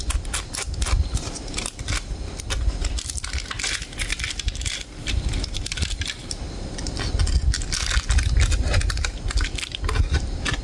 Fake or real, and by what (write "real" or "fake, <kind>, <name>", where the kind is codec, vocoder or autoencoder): real